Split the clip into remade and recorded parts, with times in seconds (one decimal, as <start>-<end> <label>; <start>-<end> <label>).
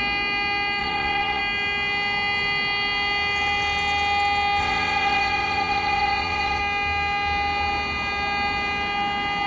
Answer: 0.0-0.8 recorded; 0.8-1.4 remade; 1.4-4.6 recorded; 4.6-6.6 remade; 6.6-9.5 recorded